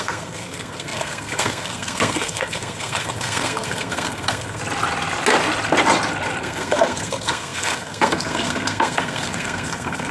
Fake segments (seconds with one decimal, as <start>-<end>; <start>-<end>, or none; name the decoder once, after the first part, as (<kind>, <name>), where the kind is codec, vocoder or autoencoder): 0.0-4.6 (codec, SNAC); 6.4-10.1